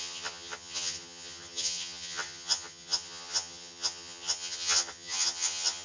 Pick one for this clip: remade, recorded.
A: remade